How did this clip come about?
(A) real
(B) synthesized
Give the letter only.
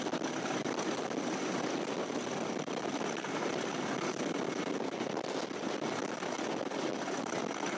A